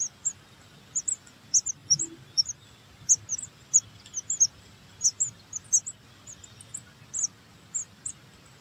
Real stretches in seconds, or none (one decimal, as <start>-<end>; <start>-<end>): 0.0-8.6